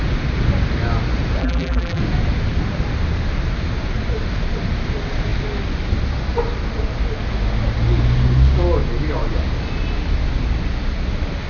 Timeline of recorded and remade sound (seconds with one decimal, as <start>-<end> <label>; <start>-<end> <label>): 0.0-1.4 recorded; 1.4-2.0 remade; 2.0-11.5 recorded

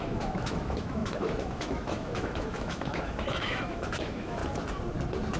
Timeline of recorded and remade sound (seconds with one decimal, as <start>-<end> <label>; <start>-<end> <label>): 0.0-4.4 remade; 4.4-5.4 recorded

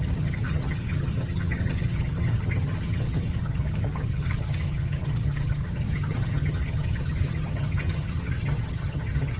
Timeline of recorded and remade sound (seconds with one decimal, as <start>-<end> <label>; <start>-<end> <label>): 0.0-9.4 remade

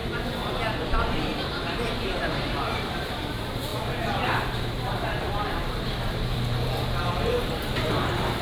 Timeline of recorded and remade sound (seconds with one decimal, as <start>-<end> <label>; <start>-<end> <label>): 0.0-0.8 recorded; 0.8-8.4 remade

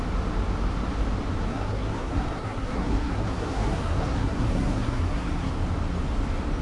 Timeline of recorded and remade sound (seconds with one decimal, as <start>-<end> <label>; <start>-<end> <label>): 0.0-1.5 recorded; 1.5-5.5 remade; 5.5-6.6 recorded

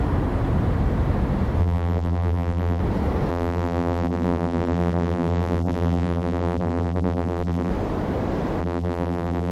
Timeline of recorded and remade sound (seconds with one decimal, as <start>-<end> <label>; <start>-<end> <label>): 0.0-1.6 recorded; 1.6-2.8 remade; 2.8-3.3 recorded; 3.3-7.7 remade; 7.7-8.6 recorded; 8.6-9.5 remade

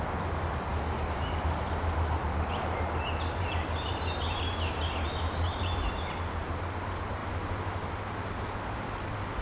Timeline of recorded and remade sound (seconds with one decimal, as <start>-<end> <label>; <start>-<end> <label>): 0.0-9.4 remade